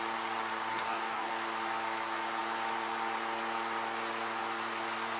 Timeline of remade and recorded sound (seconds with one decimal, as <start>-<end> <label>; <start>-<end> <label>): 0.0-0.7 recorded; 0.7-1.3 remade; 1.3-5.2 recorded

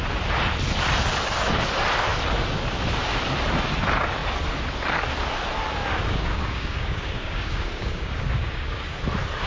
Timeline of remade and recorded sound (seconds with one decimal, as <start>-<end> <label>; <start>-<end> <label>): 0.0-5.9 recorded; 5.9-9.0 remade; 9.0-9.5 recorded

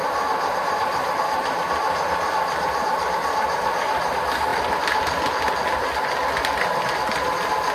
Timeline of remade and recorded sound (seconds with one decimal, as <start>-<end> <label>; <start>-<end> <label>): 0.0-7.7 recorded

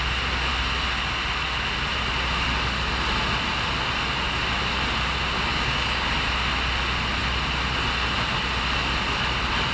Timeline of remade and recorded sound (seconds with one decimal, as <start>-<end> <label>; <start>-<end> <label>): 0.0-5.5 recorded; 5.5-6.1 remade; 6.1-9.7 recorded

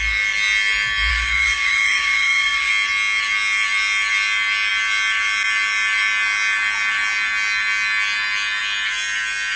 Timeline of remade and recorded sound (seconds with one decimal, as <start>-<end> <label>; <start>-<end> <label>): 0.0-1.1 recorded; 1.1-2.7 remade; 2.7-9.6 recorded

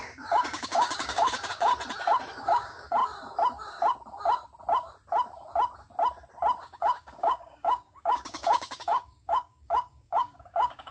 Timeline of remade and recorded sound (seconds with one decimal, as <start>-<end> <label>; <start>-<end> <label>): 0.0-1.7 remade; 1.7-2.4 recorded; 2.4-3.0 remade; 3.0-6.6 recorded; 6.6-10.9 remade